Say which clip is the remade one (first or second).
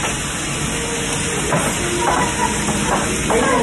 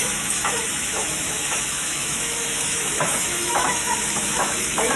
second